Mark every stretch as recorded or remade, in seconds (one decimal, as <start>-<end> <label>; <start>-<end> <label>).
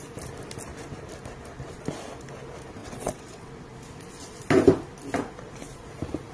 0.0-2.8 recorded; 2.8-3.5 remade; 3.5-6.3 recorded